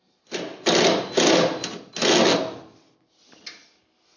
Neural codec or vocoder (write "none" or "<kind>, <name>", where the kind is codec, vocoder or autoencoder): none